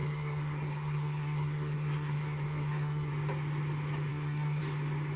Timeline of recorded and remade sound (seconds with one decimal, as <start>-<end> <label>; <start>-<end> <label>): 0.0-3.1 remade; 3.1-4.1 recorded; 4.1-4.6 remade; 4.6-5.2 recorded